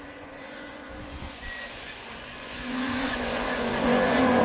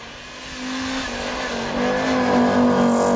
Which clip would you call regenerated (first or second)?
first